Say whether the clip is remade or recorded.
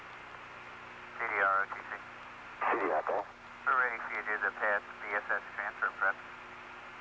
recorded